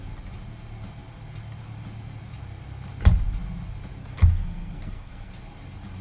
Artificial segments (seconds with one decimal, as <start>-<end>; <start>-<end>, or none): 4.0-5.3